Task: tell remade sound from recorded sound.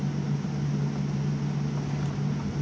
recorded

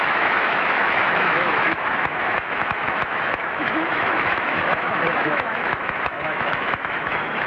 remade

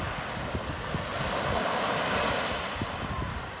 recorded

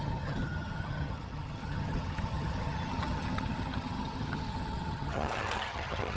remade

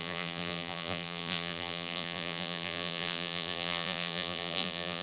remade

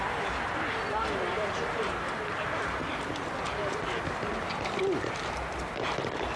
recorded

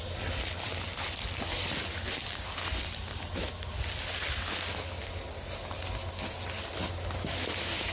recorded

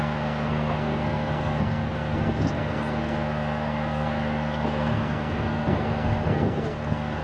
remade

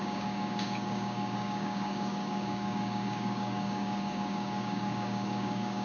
remade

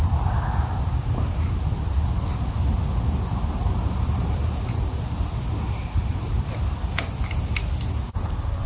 recorded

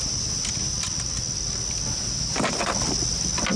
recorded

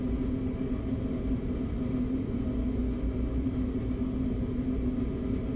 recorded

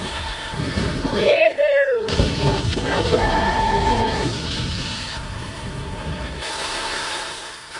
remade